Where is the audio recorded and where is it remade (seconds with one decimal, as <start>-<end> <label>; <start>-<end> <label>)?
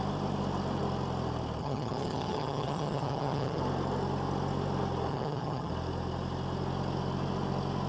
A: 0.0-1.6 recorded; 1.6-3.6 remade; 3.6-5.1 recorded; 5.1-5.7 remade; 5.7-7.9 recorded